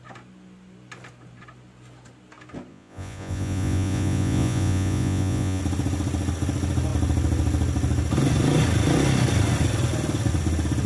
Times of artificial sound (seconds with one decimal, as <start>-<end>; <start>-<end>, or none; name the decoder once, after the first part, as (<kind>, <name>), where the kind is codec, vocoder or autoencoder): 2.7-5.6 (vocoder, Vocos)